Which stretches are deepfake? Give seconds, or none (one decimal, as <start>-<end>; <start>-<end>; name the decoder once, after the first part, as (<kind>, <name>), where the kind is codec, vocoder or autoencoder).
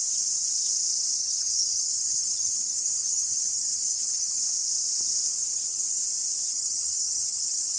1.2-4.4 (vocoder, HiFi-GAN); 5.4-6.0; 6.5-7.8